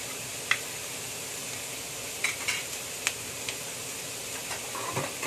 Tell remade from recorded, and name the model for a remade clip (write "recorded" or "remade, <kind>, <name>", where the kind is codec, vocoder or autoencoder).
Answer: recorded